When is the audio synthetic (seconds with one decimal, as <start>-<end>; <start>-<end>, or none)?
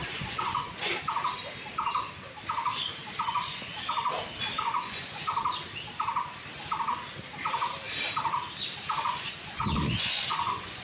0.0-0.9; 3.3-3.7; 4.6-5.3; 9.0-10.8